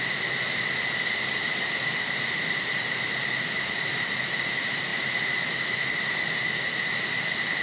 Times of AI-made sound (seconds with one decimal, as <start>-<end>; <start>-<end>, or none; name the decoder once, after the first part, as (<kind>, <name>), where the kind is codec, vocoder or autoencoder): none